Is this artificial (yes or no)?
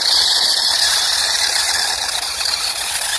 yes